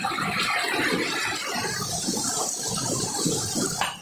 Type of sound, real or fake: real